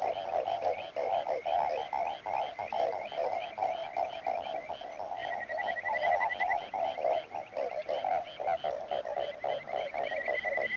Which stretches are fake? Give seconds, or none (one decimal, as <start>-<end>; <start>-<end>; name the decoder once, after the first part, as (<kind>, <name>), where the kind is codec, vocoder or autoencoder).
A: none